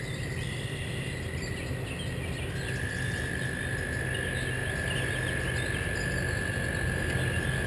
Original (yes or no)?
yes